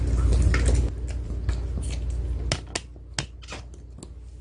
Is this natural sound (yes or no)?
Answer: yes